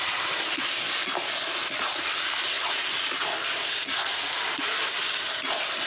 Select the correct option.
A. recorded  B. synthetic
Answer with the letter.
A